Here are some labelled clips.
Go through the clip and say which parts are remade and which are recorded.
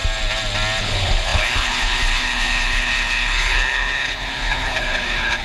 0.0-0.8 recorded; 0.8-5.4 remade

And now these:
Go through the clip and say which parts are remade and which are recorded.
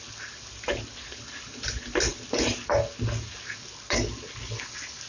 0.0-5.1 recorded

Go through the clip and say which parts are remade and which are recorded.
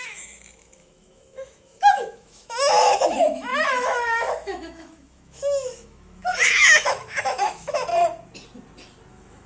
0.0-7.9 remade; 7.9-9.1 recorded; 9.1-9.5 remade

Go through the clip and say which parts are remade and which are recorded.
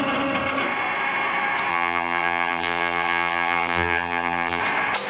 0.0-1.7 recorded; 1.7-4.6 remade; 4.6-5.1 recorded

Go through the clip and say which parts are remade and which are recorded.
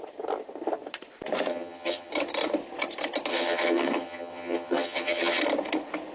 0.0-1.5 recorded; 1.5-2.1 remade; 2.1-3.3 recorded; 3.3-5.4 remade; 5.4-6.1 recorded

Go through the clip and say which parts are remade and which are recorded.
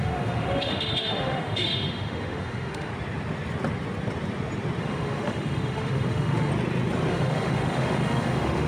0.0-2.9 remade; 2.9-4.8 recorded; 4.8-6.5 remade; 6.5-7.1 recorded; 7.1-8.7 remade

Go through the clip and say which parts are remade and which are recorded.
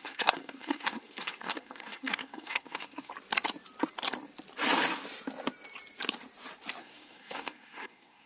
0.0-3.1 remade; 3.1-6.8 recorded; 6.8-8.3 remade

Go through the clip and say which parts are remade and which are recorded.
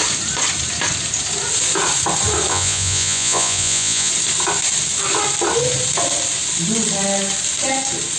0.0-2.5 recorded; 2.5-4.1 remade; 4.1-8.2 recorded